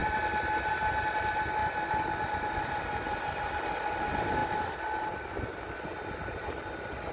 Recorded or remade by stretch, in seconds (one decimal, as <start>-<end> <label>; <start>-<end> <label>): 0.0-7.1 recorded

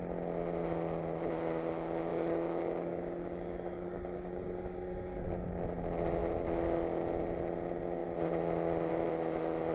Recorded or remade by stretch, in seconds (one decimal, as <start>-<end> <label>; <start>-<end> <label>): 0.0-2.1 recorded; 2.1-5.6 remade; 5.6-9.7 recorded

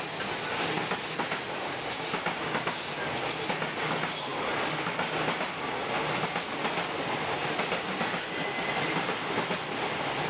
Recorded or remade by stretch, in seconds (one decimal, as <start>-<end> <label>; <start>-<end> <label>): 0.0-10.3 recorded